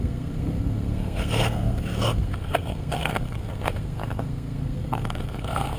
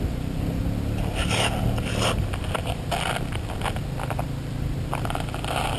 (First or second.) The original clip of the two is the second